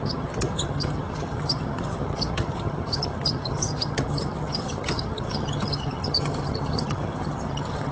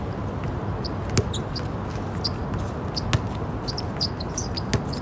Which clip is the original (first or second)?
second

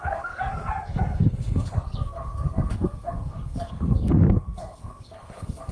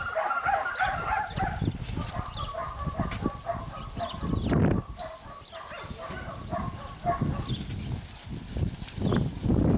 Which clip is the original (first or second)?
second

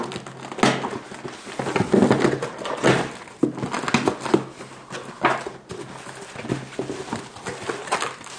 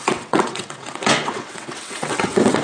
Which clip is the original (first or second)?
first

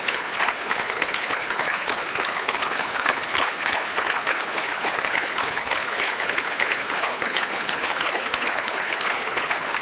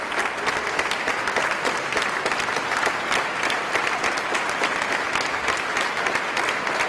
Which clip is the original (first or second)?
second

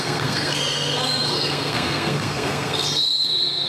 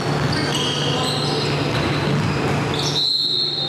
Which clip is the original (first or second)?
second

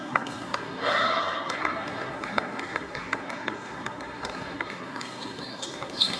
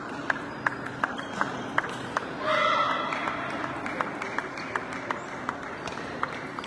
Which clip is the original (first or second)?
second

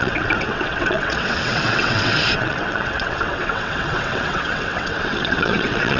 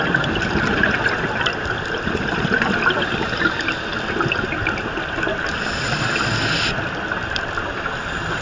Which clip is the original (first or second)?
second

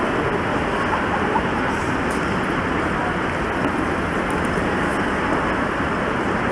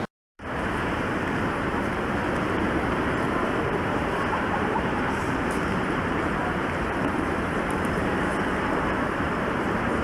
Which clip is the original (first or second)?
first